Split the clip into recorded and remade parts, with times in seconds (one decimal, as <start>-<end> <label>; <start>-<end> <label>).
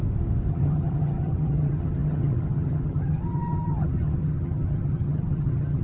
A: 0.0-0.5 recorded; 0.5-5.8 remade